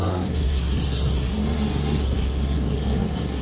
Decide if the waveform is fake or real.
fake